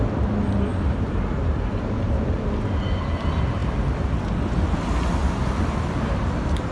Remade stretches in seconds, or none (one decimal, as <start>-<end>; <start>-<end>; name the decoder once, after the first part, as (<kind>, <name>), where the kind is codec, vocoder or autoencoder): 0.7-2.5 (vocoder, BigVGAN v2)